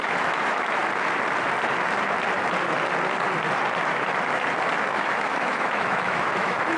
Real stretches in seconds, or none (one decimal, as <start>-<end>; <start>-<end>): 0.8-4.9